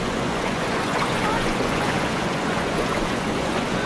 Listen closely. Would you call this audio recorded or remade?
remade